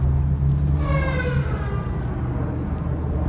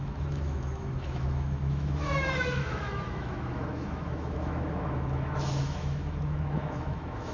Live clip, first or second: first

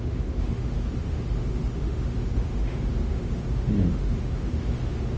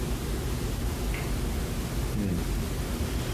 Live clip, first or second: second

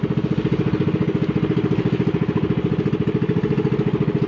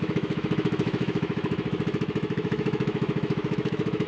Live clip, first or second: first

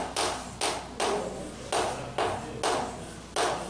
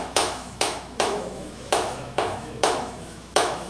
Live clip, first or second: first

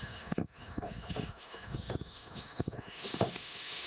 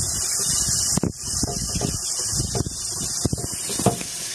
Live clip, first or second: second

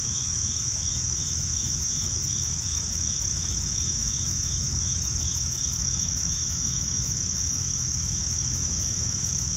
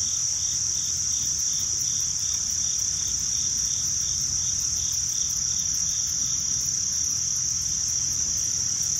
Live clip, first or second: second